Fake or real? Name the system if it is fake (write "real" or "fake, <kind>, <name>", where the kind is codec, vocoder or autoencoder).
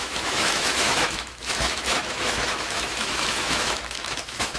fake, autoencoder, DAC-VAE